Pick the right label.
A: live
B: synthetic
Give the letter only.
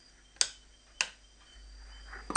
A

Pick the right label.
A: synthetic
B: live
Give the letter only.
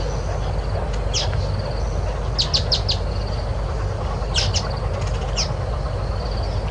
B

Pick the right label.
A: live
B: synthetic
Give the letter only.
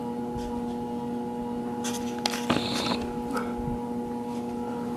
A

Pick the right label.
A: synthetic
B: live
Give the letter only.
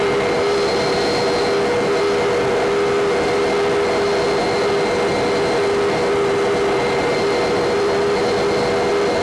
B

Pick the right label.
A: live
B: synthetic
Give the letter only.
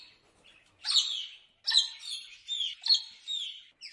A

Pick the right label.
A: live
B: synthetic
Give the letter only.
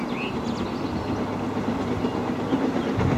A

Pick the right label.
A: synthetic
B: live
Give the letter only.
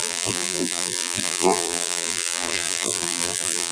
A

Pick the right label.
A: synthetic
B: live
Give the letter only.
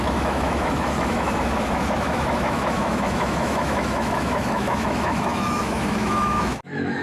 A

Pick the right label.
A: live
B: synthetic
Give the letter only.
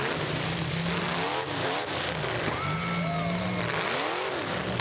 A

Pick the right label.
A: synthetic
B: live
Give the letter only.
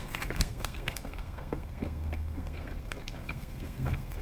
A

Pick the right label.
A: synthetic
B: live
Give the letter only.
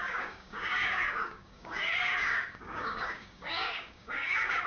A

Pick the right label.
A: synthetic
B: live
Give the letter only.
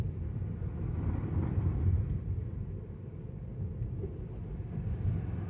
B